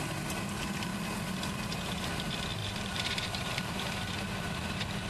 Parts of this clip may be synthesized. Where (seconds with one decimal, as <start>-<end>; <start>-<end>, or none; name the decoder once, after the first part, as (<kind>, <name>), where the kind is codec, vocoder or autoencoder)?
2.6-4.0 (vocoder, BigVGAN v2)